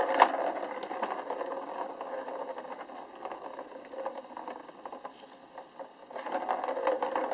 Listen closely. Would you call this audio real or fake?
real